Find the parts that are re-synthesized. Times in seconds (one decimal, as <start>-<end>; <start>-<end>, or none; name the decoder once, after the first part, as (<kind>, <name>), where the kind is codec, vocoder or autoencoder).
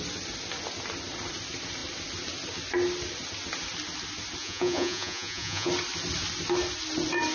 4.4-5.7 (vocoder, Vocos)